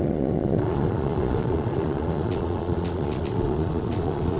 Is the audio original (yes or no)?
no